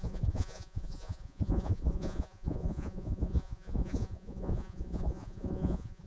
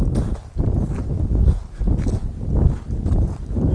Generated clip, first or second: first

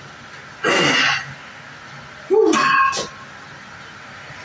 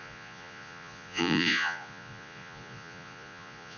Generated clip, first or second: second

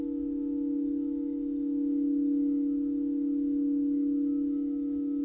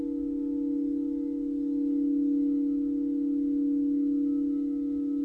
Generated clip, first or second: first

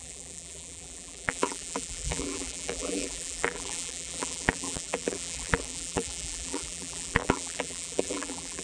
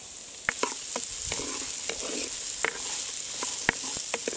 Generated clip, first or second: first